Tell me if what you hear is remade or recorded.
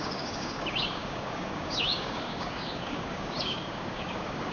remade